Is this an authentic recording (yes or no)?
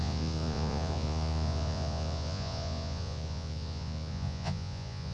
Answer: no